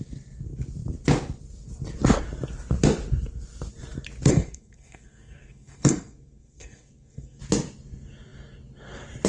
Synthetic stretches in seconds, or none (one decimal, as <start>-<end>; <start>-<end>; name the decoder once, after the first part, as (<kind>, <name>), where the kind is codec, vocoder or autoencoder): 4.3-7.4 (codec, SNAC)